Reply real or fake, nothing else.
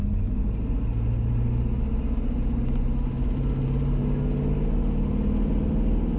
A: real